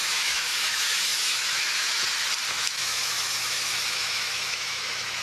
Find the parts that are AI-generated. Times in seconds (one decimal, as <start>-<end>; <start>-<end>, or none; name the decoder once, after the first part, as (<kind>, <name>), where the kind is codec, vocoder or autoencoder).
0.0-2.0 (autoencoder, DAC-VAE); 2.5-5.2